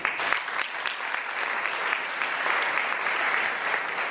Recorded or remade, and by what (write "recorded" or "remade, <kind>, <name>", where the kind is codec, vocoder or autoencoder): recorded